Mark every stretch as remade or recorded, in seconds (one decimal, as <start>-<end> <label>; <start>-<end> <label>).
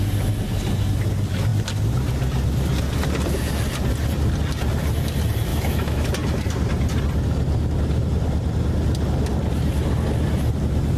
0.0-5.5 recorded; 5.5-6.1 remade; 6.1-11.0 recorded